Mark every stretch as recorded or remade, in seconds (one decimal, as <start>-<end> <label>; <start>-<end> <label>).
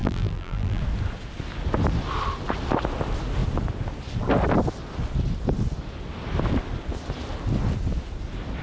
0.0-0.8 remade; 0.8-8.6 recorded